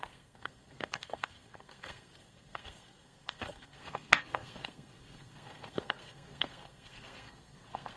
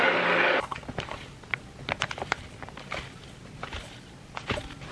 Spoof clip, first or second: first